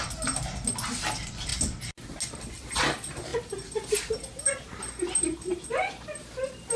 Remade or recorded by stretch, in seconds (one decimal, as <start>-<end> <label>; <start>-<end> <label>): 0.0-6.8 recorded